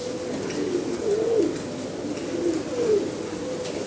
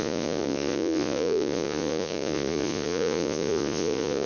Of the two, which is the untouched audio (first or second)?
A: first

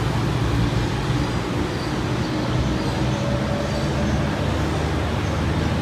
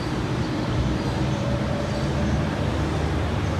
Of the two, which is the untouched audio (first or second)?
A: first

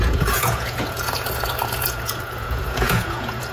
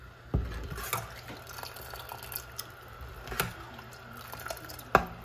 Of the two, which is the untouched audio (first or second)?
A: second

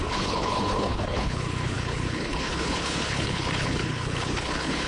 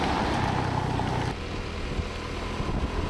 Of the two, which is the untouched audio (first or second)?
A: second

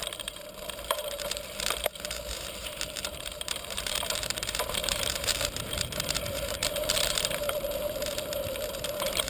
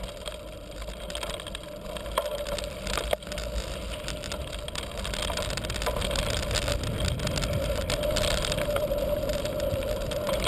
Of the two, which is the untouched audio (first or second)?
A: second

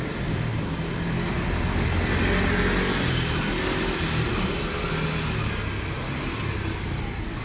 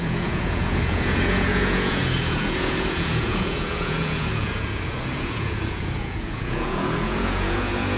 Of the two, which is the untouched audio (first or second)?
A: first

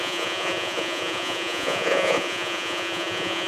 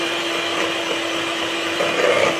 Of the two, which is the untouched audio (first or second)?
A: second